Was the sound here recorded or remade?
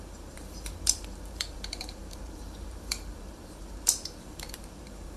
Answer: remade